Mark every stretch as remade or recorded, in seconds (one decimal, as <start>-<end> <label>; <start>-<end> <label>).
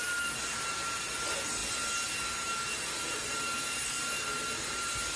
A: 0.0-5.2 recorded